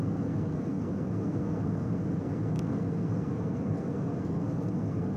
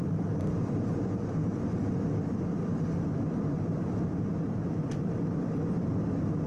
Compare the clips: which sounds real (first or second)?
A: second